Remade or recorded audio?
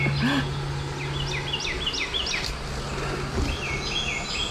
recorded